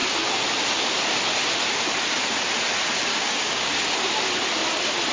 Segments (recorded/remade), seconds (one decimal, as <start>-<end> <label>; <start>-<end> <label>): 0.0-3.1 recorded; 3.1-3.7 remade; 3.7-5.1 recorded